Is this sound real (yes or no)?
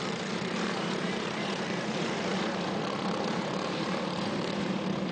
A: no